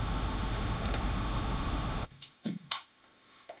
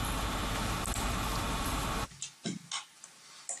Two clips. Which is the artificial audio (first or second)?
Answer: first